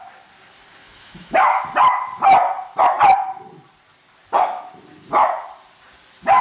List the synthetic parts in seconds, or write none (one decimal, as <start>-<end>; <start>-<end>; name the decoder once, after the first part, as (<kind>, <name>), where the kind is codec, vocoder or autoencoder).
0.8-1.6 (autoencoder, DAC-VAE)